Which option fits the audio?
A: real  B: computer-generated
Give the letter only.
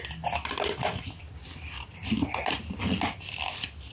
A